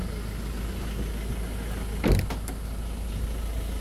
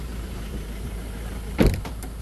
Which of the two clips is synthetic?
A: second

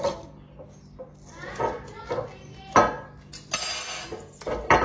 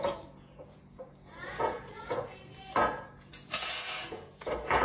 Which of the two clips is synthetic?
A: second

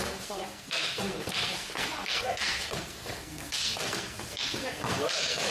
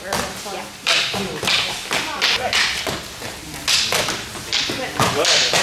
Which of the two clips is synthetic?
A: first